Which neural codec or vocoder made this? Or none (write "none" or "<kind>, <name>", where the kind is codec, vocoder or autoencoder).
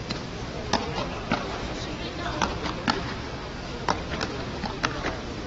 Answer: vocoder, BigVGAN v2